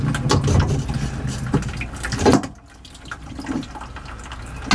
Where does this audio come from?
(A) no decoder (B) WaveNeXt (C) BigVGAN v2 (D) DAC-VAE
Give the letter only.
A